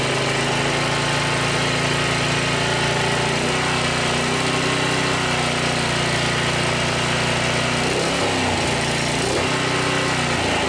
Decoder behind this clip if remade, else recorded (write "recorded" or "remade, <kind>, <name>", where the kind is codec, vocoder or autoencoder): recorded